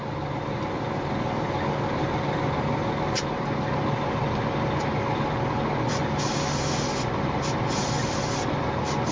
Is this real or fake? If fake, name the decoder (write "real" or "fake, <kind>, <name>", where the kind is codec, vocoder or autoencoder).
real